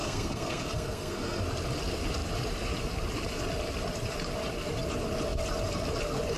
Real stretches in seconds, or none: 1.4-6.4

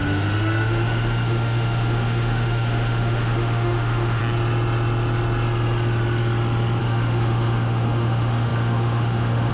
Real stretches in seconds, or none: 4.2-6.8

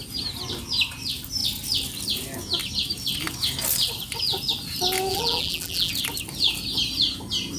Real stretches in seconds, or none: 0.0-5.1; 5.9-7.6

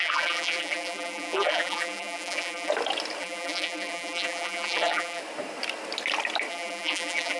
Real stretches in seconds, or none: 2.7-3.2; 5.2-6.5

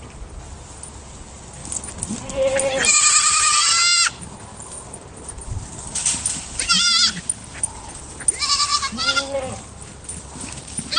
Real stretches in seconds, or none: 0.0-11.0

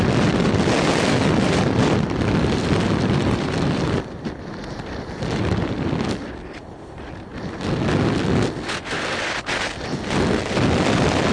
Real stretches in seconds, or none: 7.3-11.3